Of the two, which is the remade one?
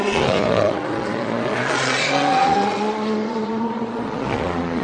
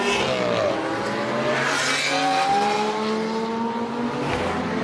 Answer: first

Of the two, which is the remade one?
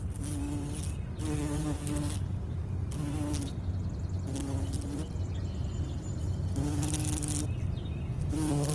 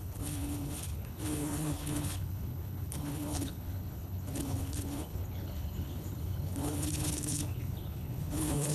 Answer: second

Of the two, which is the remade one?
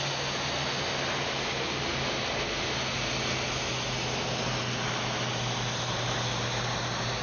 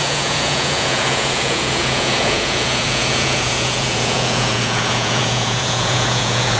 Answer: second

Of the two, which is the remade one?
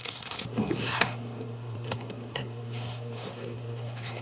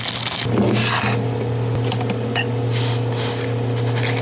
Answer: first